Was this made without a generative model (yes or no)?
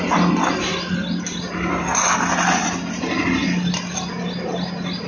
yes